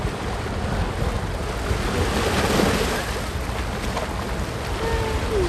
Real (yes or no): yes